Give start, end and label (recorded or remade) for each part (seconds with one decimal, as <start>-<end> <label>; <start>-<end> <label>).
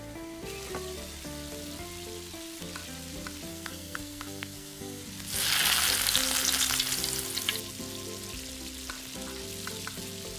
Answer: 0.0-3.5 recorded; 3.5-5.0 remade; 5.0-10.4 recorded